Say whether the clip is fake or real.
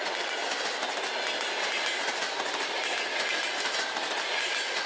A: real